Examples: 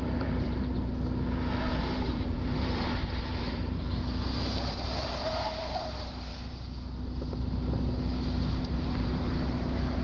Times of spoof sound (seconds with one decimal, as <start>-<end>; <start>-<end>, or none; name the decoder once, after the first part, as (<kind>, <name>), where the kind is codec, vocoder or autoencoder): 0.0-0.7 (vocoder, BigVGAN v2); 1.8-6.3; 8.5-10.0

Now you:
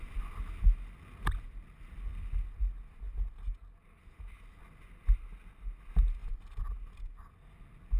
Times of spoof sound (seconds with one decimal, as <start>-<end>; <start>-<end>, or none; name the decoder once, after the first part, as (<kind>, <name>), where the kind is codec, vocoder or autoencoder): none

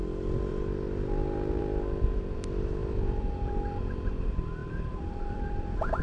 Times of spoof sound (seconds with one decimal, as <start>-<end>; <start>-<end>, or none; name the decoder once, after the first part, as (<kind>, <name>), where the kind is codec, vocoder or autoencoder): 0.5-1.6 (vocoder, BigVGAN v2); 2.8-3.5; 4.6-6.0